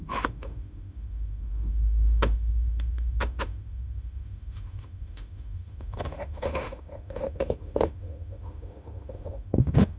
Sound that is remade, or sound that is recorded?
remade